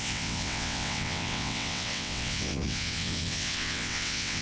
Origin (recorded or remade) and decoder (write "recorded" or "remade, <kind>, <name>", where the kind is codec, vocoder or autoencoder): remade, vocoder, WaveNeXt